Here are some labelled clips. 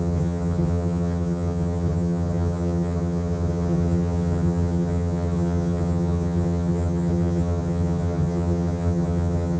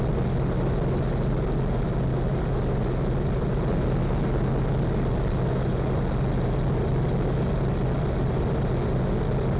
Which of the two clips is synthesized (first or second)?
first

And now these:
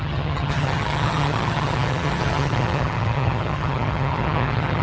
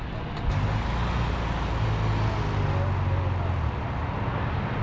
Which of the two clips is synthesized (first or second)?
first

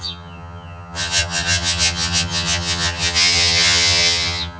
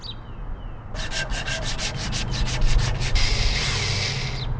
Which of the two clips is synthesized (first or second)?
first